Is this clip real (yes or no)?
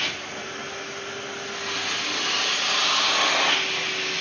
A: yes